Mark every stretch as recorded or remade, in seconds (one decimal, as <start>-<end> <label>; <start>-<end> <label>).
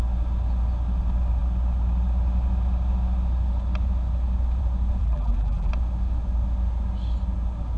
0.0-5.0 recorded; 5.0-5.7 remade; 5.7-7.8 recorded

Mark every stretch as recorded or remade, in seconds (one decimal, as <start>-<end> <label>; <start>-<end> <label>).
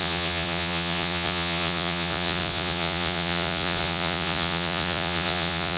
0.0-5.8 remade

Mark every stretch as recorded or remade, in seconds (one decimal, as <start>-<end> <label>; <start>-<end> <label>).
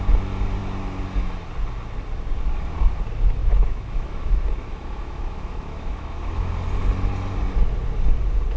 0.0-3.4 recorded; 3.4-6.5 remade; 6.5-8.6 recorded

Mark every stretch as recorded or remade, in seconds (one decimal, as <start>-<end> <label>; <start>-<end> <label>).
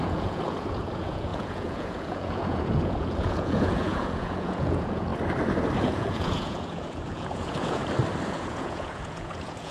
0.0-5.1 remade; 5.1-5.8 recorded; 5.8-7.8 remade; 7.8-8.3 recorded; 8.3-9.7 remade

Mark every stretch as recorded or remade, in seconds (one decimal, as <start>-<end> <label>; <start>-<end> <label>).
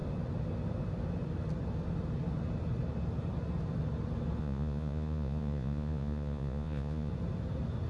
0.0-4.4 recorded; 4.4-7.1 remade; 7.1-7.9 recorded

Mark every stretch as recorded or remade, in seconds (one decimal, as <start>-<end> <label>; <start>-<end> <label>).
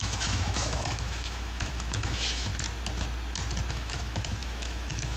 0.0-2.5 remade; 2.5-3.7 recorded; 3.7-5.2 remade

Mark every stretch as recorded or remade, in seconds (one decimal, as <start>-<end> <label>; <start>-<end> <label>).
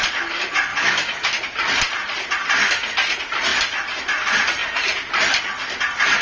0.0-0.7 recorded; 0.7-1.3 remade; 1.3-6.2 recorded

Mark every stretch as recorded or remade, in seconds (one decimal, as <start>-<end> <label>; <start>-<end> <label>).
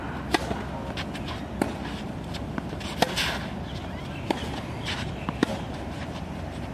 0.0-5.4 recorded; 5.4-6.7 remade